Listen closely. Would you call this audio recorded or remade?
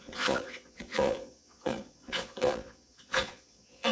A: remade